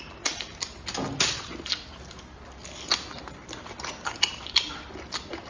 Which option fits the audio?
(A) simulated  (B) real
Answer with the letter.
B